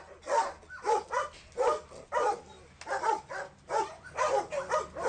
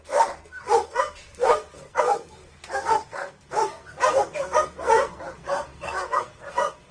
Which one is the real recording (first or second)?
first